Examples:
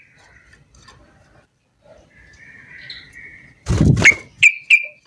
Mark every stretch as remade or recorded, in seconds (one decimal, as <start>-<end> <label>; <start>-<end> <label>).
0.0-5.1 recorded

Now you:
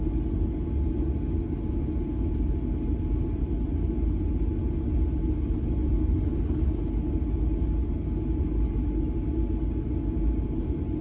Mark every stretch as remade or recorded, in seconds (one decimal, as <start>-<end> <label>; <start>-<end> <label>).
0.0-11.0 recorded

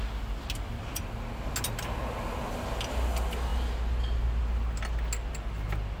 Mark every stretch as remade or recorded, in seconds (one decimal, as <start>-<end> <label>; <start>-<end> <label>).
0.0-6.0 recorded